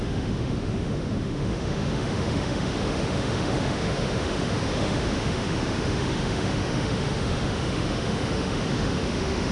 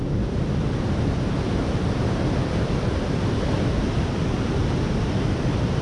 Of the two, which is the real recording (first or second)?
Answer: second